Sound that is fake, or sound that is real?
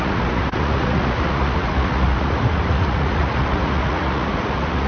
fake